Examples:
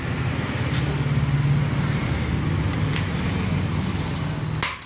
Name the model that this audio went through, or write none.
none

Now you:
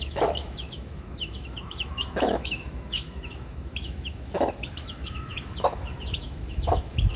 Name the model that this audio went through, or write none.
autoencoder, DAC-VAE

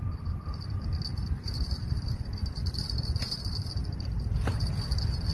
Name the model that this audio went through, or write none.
none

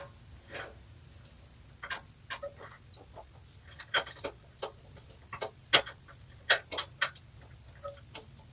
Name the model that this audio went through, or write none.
none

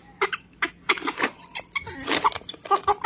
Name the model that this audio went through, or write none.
none